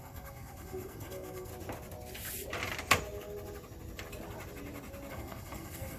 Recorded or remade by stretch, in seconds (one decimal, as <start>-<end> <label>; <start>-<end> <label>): 0.0-1.5 remade; 1.5-5.1 recorded; 5.1-6.0 remade